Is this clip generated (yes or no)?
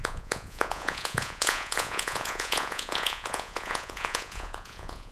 yes